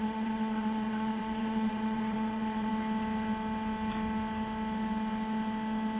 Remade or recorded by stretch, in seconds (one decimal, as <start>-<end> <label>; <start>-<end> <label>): 0.0-2.7 remade; 2.7-6.0 recorded